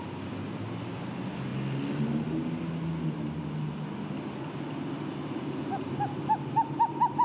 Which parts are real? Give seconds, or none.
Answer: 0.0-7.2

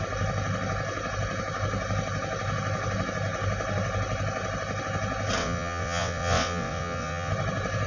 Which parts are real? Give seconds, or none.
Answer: 0.0-5.4; 7.3-7.9

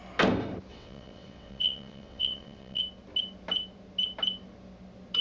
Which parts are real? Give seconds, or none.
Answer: 0.0-0.7; 2.8-5.2

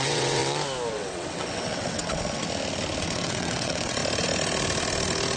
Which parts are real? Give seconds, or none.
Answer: 0.4-0.9; 2.4-3.0; 4.0-5.4